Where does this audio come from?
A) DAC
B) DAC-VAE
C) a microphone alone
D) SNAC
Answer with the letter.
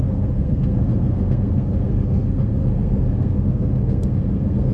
D